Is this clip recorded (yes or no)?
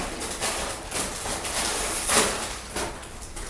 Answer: no